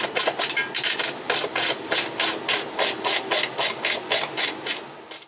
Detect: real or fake real